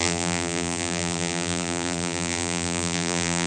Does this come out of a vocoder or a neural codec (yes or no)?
yes